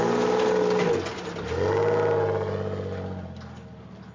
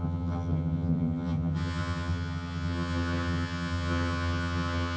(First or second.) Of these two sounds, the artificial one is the second